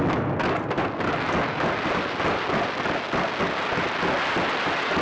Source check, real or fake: real